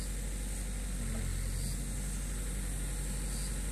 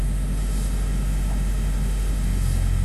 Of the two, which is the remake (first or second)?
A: second